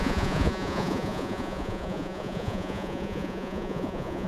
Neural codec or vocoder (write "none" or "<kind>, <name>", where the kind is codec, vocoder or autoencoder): vocoder, Vocos